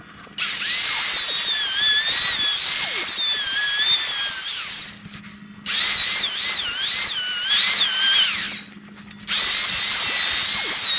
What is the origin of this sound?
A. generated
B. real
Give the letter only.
B